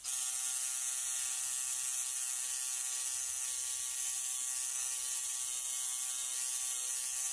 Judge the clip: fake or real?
real